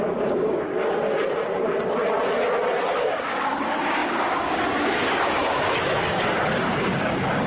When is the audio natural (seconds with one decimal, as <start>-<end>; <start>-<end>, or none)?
0.7-3.0